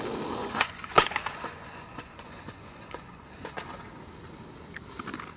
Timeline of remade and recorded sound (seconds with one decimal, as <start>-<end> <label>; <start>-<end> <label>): 0.0-0.4 recorded; 0.4-3.6 remade; 3.6-5.4 recorded